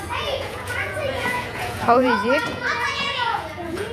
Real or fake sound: fake